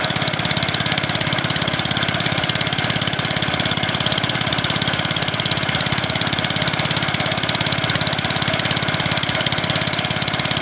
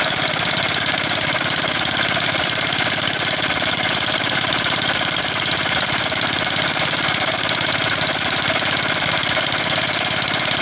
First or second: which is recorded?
first